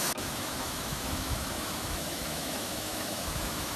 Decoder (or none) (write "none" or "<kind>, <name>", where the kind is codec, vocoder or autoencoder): autoencoder, DAC-VAE